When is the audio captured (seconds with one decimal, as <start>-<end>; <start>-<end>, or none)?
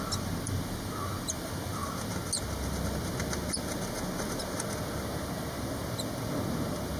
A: 1.8-4.9; 5.8-7.0